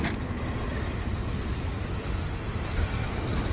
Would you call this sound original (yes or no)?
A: yes